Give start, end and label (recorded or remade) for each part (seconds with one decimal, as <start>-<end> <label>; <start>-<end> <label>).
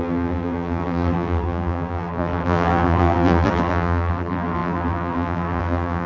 0.0-6.1 remade